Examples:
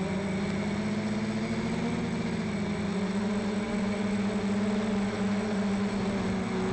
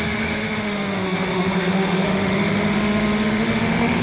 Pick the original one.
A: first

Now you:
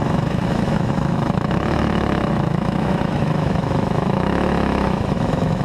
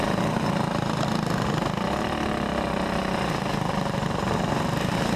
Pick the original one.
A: second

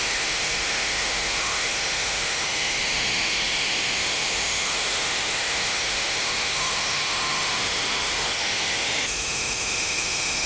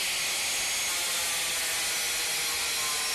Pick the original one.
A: second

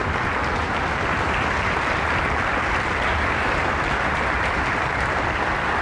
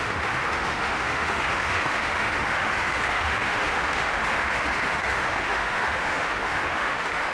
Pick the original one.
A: first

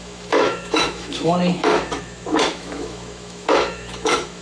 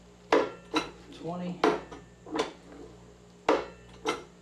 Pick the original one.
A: second